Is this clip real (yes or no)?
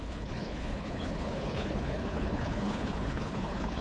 no